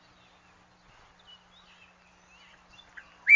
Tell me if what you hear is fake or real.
real